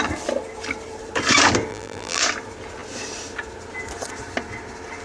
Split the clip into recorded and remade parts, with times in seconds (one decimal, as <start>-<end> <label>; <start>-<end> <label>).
0.0-1.7 recorded; 1.7-2.2 remade; 2.2-5.0 recorded